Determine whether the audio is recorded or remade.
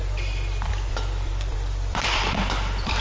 recorded